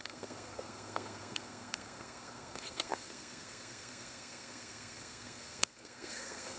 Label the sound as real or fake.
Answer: fake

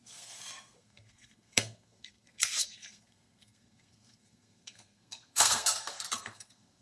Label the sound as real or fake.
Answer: fake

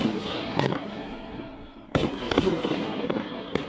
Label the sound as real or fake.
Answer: fake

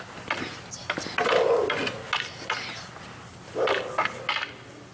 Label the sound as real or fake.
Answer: real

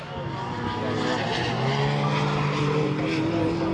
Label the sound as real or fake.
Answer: real